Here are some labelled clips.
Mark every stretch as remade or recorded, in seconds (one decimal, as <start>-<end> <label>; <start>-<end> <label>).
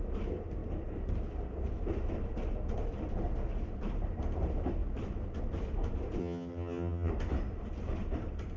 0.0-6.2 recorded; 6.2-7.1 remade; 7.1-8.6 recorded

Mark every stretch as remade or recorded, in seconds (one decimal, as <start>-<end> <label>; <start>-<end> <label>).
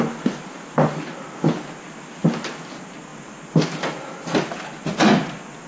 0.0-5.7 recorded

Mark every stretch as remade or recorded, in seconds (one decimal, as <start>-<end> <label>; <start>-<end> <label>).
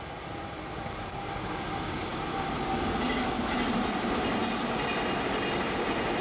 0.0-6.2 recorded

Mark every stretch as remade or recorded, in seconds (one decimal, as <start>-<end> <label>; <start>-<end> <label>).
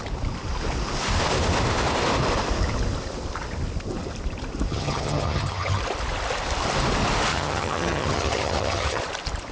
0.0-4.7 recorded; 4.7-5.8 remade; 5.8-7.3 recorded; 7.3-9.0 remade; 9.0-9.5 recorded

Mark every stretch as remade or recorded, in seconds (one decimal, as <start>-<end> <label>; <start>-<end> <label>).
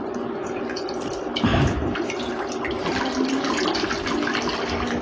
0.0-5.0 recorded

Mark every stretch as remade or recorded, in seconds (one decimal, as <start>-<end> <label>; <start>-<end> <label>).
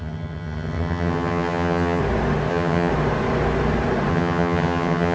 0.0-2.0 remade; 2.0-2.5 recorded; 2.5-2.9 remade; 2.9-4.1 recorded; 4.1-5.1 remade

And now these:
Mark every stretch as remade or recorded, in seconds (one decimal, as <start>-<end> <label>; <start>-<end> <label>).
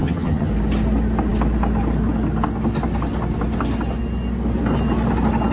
0.0-0.5 remade; 0.5-5.5 recorded